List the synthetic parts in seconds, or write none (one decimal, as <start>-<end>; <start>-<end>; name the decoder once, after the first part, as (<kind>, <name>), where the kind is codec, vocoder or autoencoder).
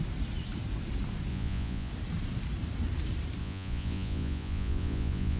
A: 1.3-1.9 (vocoder, Vocos); 3.4-5.4